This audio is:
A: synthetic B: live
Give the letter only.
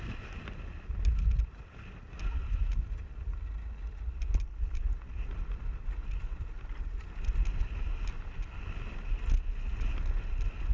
B